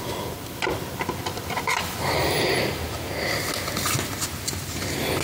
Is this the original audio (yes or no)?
yes